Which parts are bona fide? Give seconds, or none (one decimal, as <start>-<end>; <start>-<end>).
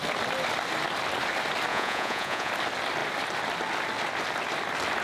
0.0-1.7; 2.5-5.0